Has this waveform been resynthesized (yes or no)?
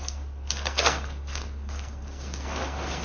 yes